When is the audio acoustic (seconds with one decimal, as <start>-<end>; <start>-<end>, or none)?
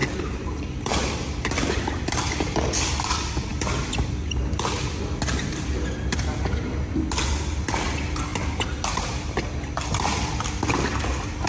0.0-11.5